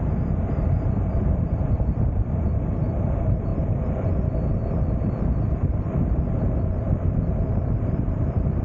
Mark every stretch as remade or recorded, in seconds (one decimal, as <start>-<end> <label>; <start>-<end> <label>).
0.0-3.5 remade; 3.5-8.0 recorded; 8.0-8.6 remade